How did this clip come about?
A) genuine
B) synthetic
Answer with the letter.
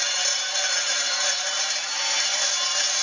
B